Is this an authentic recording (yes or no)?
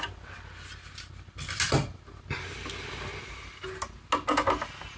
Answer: yes